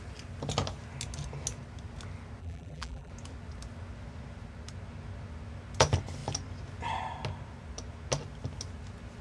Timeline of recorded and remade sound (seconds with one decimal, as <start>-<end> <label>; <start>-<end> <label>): 0.0-2.4 recorded; 2.4-3.1 remade; 3.1-9.2 recorded